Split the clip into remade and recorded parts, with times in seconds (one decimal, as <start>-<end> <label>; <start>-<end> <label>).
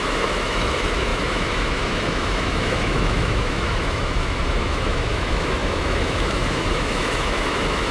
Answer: 0.0-7.9 remade